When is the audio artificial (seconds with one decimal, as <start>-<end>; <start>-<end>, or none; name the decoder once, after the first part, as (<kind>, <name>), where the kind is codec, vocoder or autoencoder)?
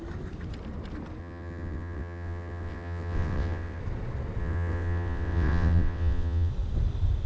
1.2-3.8 (vocoder, WaveNeXt); 4.4-6.5